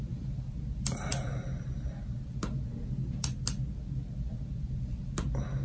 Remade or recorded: recorded